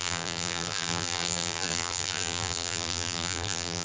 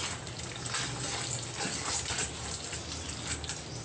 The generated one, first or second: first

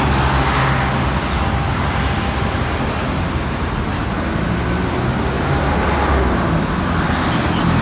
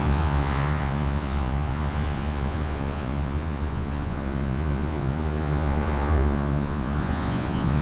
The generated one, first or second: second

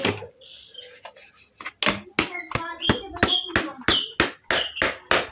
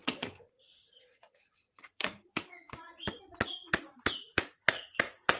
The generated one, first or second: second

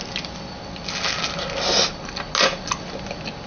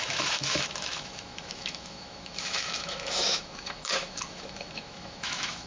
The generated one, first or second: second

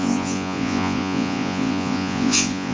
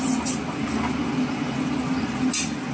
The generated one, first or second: first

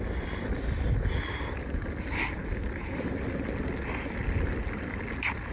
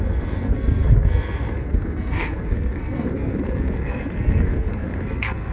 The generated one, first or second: second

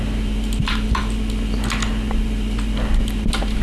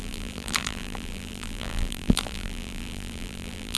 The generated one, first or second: second